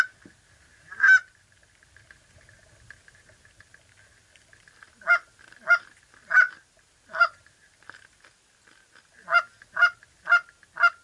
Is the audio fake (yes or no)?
no